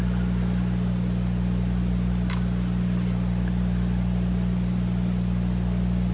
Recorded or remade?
recorded